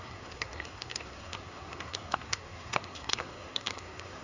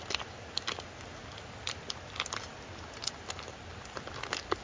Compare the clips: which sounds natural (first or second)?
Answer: second